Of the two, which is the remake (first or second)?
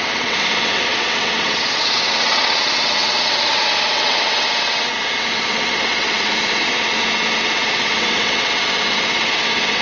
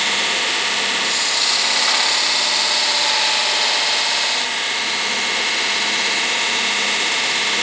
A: first